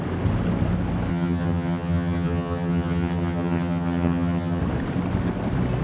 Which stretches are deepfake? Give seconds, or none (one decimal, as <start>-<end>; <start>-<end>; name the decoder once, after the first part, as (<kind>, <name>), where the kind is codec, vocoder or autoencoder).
1.1-4.6 (vocoder, HiFi-GAN)